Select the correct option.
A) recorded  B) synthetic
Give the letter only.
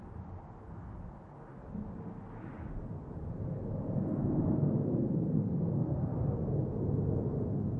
A